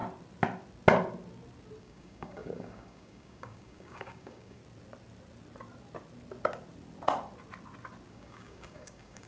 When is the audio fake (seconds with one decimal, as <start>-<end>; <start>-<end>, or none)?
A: 1.8-4.6; 8.1-9.3